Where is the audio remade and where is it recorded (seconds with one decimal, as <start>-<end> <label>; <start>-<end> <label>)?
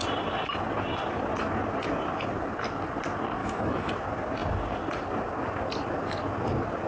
0.0-3.4 recorded; 3.4-3.9 remade; 3.9-6.9 recorded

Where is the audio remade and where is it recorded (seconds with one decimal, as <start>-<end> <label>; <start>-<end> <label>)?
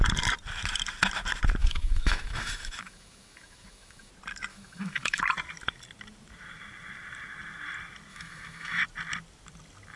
0.0-1.6 recorded; 1.6-4.1 remade; 4.1-4.5 recorded; 4.5-5.2 remade; 5.2-8.1 recorded; 8.1-8.8 remade; 8.8-10.0 recorded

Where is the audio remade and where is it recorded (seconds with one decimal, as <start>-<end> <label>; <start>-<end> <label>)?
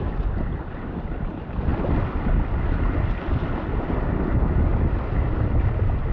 0.0-6.1 recorded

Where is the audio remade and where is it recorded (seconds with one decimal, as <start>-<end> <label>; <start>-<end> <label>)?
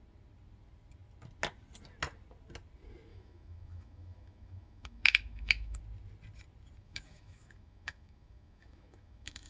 0.0-3.1 recorded; 3.1-5.8 remade; 5.8-6.8 recorded; 6.8-9.5 remade